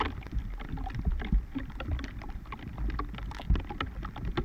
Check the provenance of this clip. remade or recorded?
recorded